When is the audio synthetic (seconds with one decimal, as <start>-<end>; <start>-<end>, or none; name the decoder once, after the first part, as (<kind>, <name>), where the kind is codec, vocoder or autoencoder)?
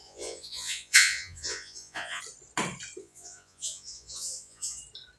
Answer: 0.0-2.2 (vocoder, Vocos); 3.0-4.8